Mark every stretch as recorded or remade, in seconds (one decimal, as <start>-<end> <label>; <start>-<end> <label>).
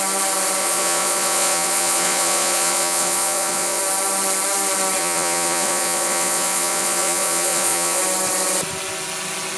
0.0-0.6 recorded; 0.6-3.8 remade; 3.8-5.0 recorded; 5.0-8.0 remade; 8.0-9.6 recorded